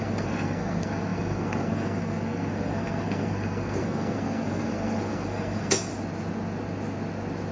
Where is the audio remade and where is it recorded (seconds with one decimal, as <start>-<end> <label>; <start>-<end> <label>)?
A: 0.0-5.9 remade; 5.9-7.5 recorded